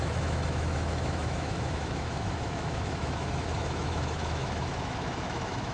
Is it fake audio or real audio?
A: fake